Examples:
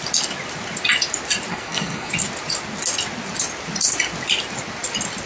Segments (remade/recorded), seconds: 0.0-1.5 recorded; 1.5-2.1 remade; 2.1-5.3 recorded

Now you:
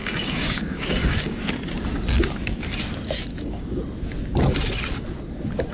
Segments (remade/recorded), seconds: 0.0-1.4 remade; 1.4-3.3 recorded; 3.3-3.8 remade; 3.8-5.7 recorded

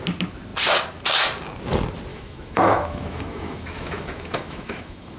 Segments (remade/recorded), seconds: 0.0-2.1 recorded; 2.1-5.2 remade